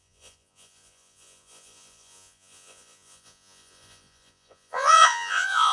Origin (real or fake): fake